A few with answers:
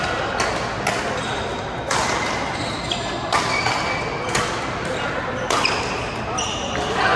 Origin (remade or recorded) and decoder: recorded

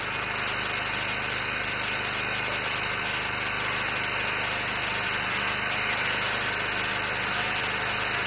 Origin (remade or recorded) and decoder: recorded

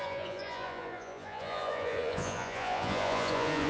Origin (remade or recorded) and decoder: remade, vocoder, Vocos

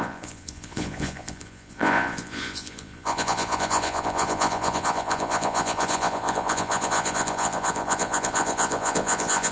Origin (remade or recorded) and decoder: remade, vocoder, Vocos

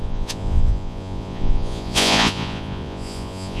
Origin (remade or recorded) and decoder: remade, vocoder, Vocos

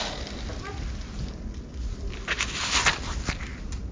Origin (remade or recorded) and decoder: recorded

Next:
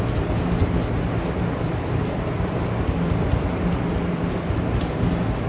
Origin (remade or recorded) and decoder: recorded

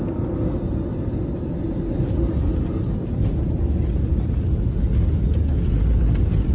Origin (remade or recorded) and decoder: recorded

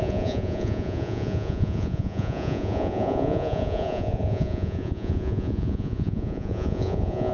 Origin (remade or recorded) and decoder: remade, vocoder, Vocos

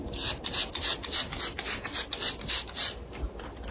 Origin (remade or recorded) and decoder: recorded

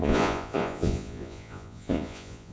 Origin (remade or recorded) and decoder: remade, vocoder, Vocos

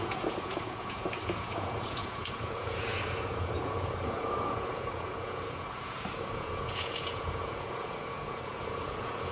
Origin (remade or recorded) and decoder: remade, vocoder, Vocos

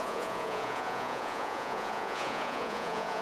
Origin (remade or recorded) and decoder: remade, vocoder, Vocos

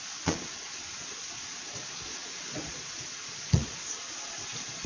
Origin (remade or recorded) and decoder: remade, vocoder, Vocos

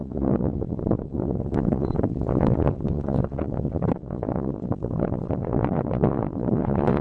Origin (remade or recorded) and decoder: remade, vocoder, Vocos